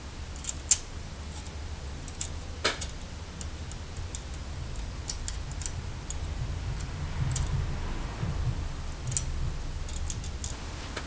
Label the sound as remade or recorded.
recorded